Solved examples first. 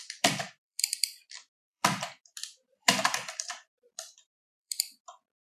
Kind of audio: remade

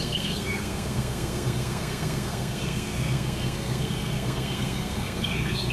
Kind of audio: remade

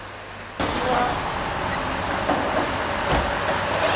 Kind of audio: recorded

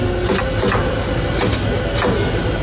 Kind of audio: recorded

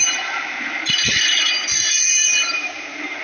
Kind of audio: remade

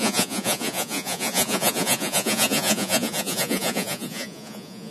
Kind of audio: remade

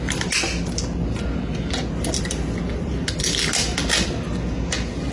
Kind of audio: recorded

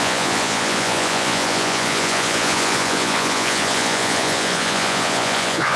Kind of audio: remade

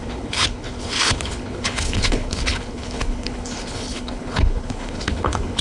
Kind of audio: remade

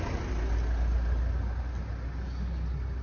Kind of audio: recorded